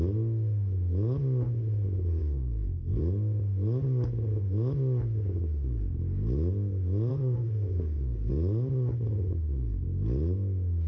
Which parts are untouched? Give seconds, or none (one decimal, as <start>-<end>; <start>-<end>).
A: 0.0-2.2; 3.0-7.1; 8.3-10.9